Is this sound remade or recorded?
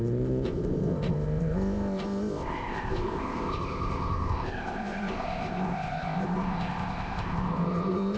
remade